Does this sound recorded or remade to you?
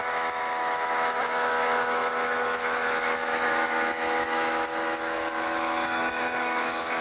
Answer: remade